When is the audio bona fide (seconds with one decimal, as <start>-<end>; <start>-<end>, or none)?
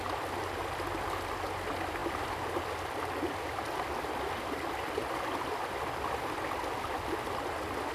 0.0-7.9